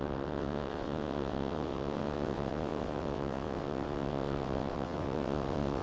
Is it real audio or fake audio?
fake